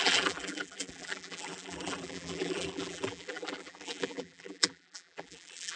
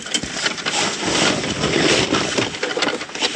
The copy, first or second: first